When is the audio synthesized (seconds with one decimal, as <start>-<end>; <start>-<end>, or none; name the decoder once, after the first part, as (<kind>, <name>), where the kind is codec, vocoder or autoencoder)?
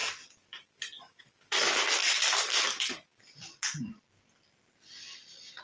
0.0-1.2 (vocoder, BigVGAN v2); 2.0-2.6